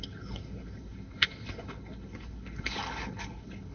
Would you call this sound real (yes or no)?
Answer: no